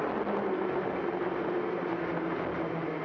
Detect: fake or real real